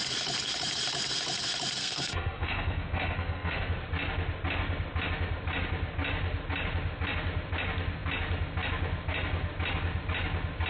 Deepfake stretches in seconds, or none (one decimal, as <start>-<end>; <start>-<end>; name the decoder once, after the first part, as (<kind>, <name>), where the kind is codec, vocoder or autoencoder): 1.8-3.8 (codec, SNAC)